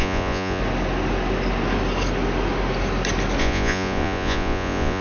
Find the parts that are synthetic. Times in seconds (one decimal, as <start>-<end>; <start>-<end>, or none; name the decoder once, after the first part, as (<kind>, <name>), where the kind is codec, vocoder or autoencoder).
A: 0.0-0.6 (vocoder, Vocos); 3.4-5.0